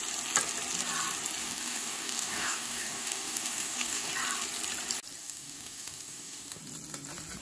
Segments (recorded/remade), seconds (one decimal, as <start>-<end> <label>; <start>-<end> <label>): 0.0-1.4 recorded; 1.4-4.1 remade; 4.1-5.2 recorded; 5.2-6.6 remade; 6.6-7.4 recorded